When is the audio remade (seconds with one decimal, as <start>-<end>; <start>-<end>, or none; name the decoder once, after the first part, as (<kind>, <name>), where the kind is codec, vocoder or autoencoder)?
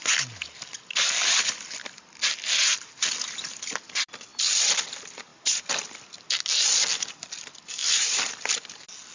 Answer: none